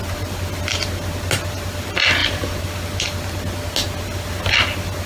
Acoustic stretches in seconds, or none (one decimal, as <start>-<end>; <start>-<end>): 0.0-5.1